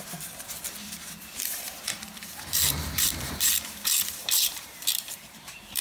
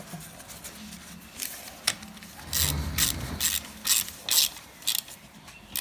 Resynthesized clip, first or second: first